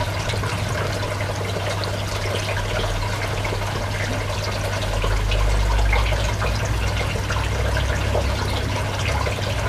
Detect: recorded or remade recorded